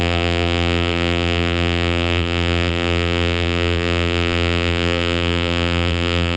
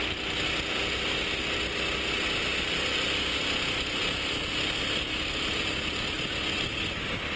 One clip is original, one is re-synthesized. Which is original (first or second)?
second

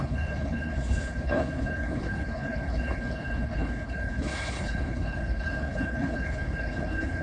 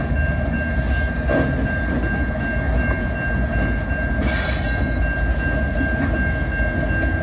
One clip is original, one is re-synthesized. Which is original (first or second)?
second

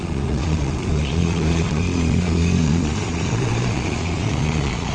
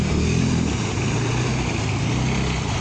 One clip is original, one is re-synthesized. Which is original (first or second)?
second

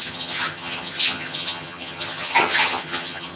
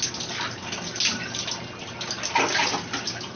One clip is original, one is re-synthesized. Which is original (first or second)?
second